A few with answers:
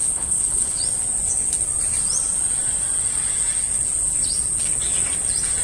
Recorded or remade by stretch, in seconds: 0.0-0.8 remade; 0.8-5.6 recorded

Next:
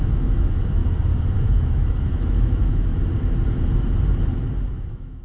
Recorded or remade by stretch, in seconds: 0.0-0.8 remade; 0.8-1.4 recorded; 1.4-2.9 remade; 2.9-4.7 recorded; 4.7-5.2 remade

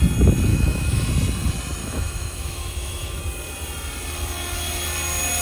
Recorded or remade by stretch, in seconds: 0.0-0.5 recorded; 0.5-1.1 remade; 1.1-1.8 recorded; 1.8-3.2 remade; 3.2-5.4 recorded

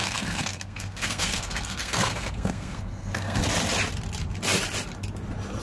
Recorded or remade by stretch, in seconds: 0.0-3.4 remade; 3.4-5.6 recorded

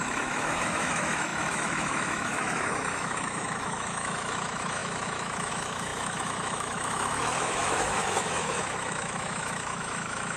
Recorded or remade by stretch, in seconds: 0.0-10.4 remade